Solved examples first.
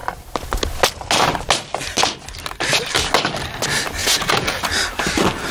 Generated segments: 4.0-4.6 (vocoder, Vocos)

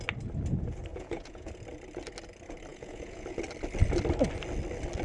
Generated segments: 0.9-1.5 (vocoder, Vocos); 2.7-3.4

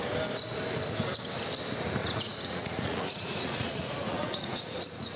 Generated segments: 2.0-5.2 (vocoder, Vocos)

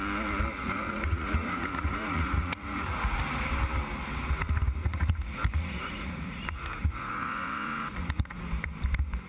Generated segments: 0.6-3.2 (vocoder, Vocos); 4.8-8.5

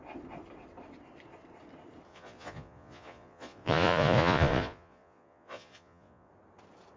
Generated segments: 2.1-6.3 (vocoder, Vocos)

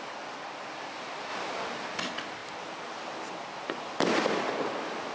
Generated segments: none